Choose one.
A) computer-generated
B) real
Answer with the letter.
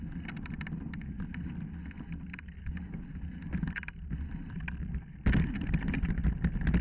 B